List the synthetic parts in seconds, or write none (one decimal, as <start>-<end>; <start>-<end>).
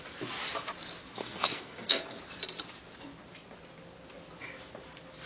1.2-2.0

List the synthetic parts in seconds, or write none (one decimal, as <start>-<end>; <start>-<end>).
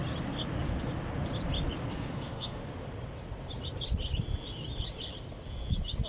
1.9-2.6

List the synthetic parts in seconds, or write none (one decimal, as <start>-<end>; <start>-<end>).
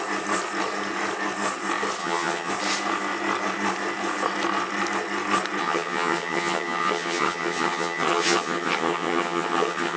2.0-2.5; 5.6-10.0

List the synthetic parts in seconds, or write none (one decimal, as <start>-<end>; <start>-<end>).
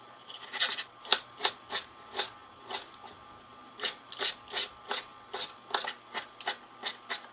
1.1-1.7; 2.4-3.1